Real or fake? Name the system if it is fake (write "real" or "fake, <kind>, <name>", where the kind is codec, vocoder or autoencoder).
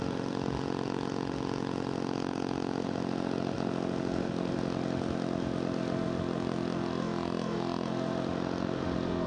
fake, autoencoder, DAC-VAE